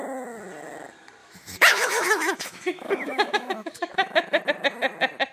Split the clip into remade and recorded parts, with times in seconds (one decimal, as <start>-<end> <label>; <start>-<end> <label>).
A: 0.0-1.2 recorded; 1.2-4.4 remade; 4.4-5.3 recorded